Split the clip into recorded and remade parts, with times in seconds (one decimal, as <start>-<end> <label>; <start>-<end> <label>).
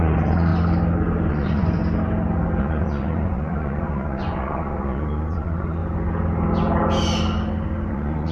0.0-0.5 remade; 0.5-1.3 recorded; 1.3-1.8 remade; 1.8-2.6 recorded; 2.6-5.8 remade; 5.8-7.9 recorded; 7.9-8.3 remade